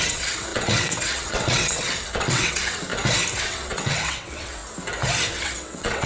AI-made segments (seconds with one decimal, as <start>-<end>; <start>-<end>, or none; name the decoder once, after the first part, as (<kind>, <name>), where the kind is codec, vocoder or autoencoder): 0.0-2.9 (vocoder, WaveNeXt); 3.4-4.6; 5.3-6.1